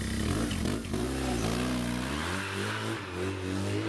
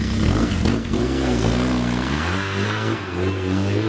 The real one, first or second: first